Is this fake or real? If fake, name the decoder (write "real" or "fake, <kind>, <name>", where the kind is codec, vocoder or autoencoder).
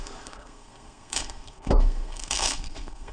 fake, codec, SNAC